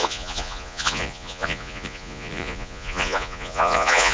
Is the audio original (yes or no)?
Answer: no